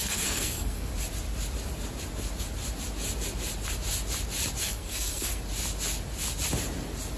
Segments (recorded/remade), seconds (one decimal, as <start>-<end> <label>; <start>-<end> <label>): 0.0-0.9 remade; 0.9-4.6 recorded; 4.6-5.4 remade; 5.4-7.2 recorded